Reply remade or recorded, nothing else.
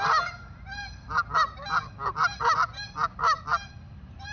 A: recorded